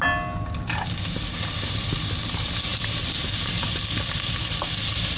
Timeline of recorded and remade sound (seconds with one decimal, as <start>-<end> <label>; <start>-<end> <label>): 0.0-5.2 recorded